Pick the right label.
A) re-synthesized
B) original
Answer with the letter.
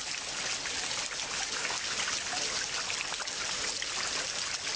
B